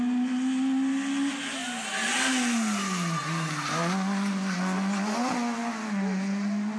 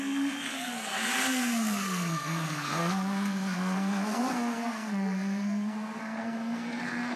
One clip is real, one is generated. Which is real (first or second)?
first